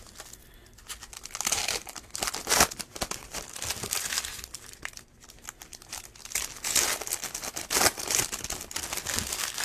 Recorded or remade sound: recorded